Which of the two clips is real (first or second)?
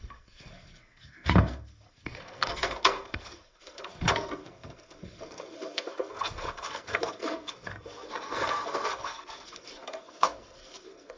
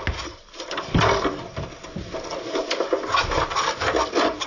second